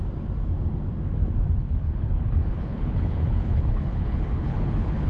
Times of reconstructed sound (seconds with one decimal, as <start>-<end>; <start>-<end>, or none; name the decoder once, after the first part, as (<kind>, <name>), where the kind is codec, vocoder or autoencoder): 1.6-5.1 (codec, HILCodec)